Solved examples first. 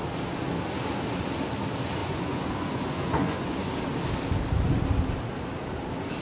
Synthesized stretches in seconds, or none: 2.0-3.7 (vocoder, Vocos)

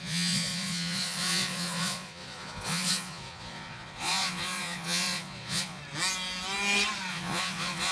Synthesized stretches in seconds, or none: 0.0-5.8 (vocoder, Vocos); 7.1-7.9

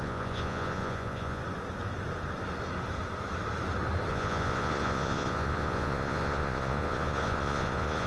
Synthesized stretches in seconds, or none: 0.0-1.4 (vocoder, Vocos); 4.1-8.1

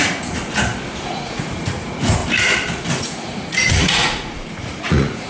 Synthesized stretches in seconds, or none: 0.0-0.4 (vocoder, Vocos); 1.0-2.2; 3.0-5.3

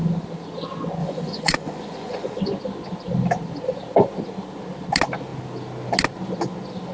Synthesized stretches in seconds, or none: 1.0-2.4 (vocoder, Vocos)

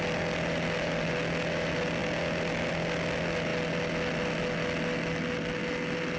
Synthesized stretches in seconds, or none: none

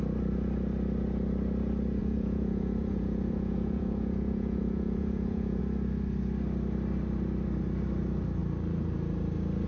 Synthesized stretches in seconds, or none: 2.0-5.6 (vocoder, Vocos)